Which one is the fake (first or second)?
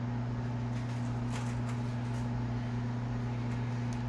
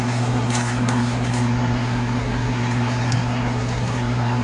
second